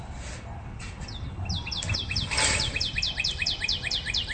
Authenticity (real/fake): real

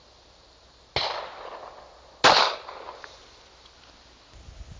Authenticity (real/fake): real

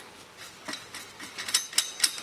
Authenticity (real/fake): real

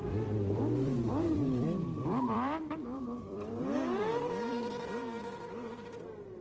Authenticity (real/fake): fake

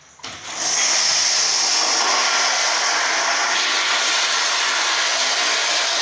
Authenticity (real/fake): real